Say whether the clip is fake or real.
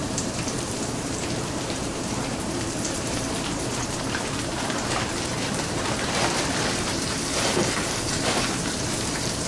fake